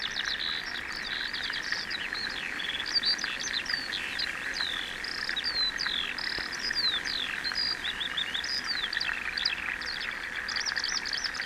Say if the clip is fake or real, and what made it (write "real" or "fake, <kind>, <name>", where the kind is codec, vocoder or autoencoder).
real